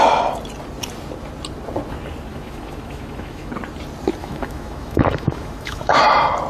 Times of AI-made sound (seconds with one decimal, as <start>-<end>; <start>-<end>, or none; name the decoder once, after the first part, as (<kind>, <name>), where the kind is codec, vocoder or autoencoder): 2.3-3.5 (autoencoder, DAC-VAE); 4.2-6.0